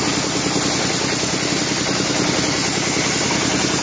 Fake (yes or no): no